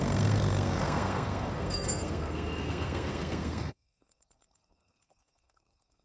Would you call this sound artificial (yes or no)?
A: yes